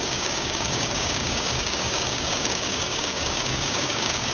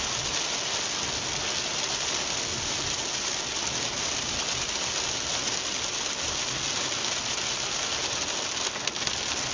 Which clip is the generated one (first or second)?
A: first